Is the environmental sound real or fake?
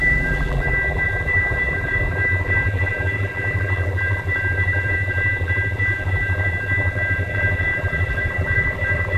fake